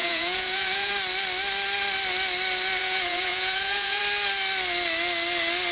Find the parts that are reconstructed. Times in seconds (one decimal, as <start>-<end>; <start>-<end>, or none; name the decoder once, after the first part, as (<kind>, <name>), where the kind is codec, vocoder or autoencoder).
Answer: 0.0-0.9 (vocoder, Vocos); 2.8-4.0